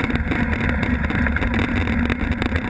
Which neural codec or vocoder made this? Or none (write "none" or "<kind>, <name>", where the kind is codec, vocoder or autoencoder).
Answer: none